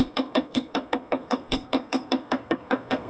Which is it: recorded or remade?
remade